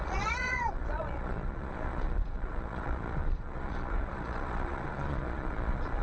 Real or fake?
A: fake